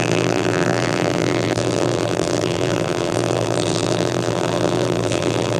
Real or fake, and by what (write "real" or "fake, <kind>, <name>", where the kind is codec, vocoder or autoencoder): fake, vocoder, BigVGAN v2